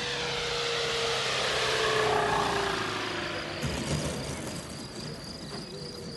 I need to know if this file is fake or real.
real